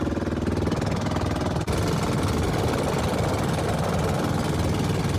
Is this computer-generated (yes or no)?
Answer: no